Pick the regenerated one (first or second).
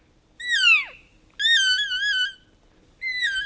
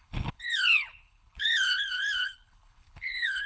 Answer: second